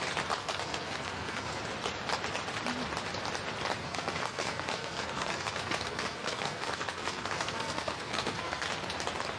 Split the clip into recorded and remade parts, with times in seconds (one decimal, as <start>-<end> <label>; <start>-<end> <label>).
0.0-0.4 recorded; 0.4-1.6 remade; 1.6-3.8 recorded; 3.8-8.7 remade; 8.7-9.4 recorded